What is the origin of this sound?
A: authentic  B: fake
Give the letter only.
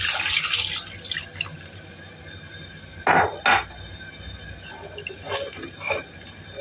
A